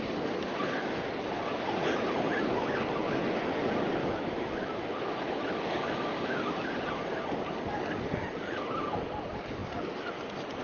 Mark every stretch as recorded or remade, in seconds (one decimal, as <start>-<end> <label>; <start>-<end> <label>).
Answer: 0.0-4.0 recorded; 4.0-6.4 remade; 6.4-10.6 recorded